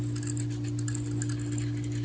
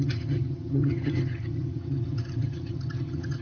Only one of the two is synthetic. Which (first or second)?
second